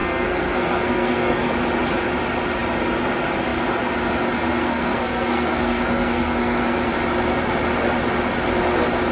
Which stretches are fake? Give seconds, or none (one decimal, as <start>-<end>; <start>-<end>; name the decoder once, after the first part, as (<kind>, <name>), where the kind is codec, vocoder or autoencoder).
0.0-1.5 (codec, SNAC); 4.5-6.9